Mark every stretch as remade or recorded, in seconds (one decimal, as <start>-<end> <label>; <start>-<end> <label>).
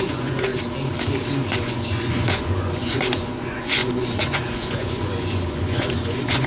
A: 0.0-0.5 remade; 0.5-1.5 recorded; 1.5-6.5 remade